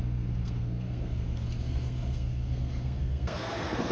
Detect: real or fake fake